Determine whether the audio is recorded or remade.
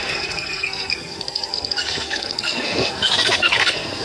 remade